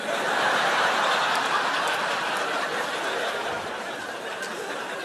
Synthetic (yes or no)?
no